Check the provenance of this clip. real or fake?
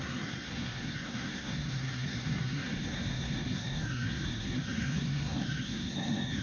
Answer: fake